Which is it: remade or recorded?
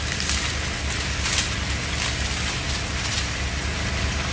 recorded